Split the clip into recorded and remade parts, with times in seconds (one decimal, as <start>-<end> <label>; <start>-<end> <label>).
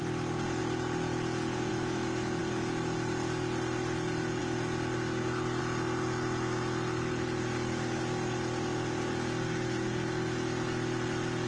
0.0-1.7 recorded; 1.7-2.4 remade; 2.4-11.5 recorded